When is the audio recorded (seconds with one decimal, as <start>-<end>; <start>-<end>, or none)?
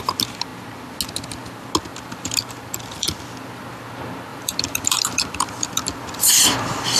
0.0-1.9; 3.2-4.3